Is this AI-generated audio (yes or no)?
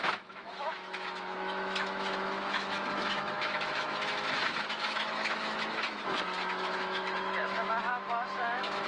yes